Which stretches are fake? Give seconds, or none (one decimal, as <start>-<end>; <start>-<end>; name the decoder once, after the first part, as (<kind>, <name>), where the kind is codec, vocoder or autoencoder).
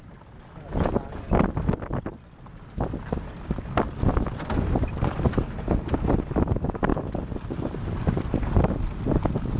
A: none